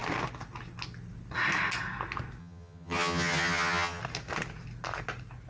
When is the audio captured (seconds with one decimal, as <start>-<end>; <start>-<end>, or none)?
0.0-2.4; 4.0-5.5

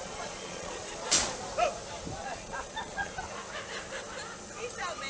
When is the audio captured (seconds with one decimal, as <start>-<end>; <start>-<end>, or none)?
1.3-2.2; 3.1-5.1

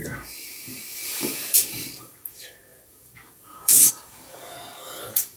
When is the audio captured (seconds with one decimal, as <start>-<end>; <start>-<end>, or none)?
none